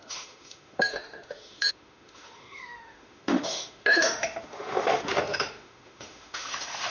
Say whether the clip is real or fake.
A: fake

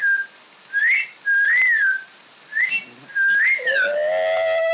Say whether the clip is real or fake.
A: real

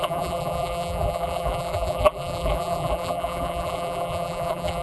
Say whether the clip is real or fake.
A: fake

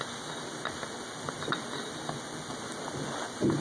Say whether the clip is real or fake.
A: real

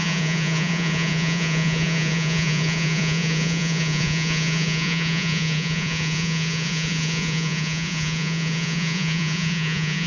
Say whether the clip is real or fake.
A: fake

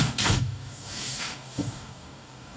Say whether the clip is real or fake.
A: fake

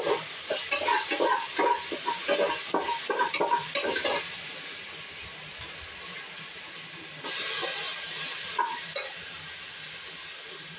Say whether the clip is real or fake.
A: real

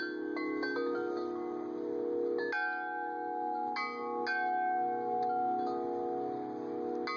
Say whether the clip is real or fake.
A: real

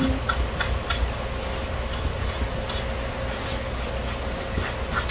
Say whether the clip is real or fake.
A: real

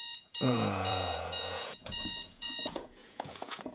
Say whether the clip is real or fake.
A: fake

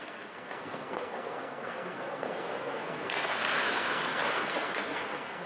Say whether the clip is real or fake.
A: fake